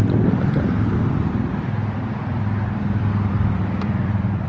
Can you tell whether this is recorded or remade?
remade